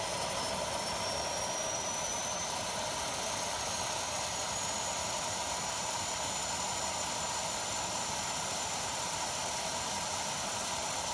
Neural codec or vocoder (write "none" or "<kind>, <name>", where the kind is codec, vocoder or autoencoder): vocoder, BigVGAN v2